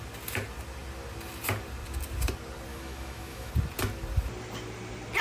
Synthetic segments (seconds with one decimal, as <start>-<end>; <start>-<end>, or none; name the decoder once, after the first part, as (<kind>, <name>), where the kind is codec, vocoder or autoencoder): 2.7-3.5 (autoencoder, DAC-VAE)